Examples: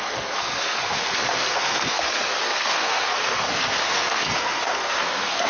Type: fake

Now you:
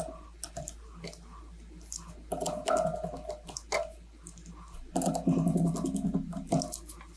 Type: real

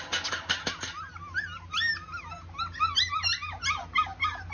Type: real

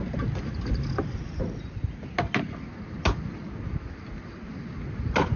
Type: real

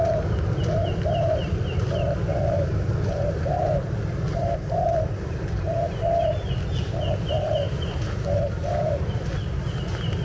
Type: real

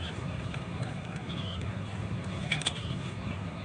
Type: fake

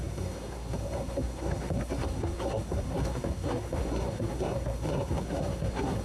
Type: fake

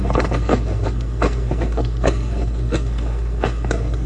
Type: fake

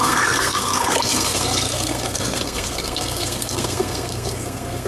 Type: fake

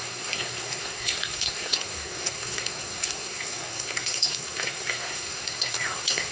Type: fake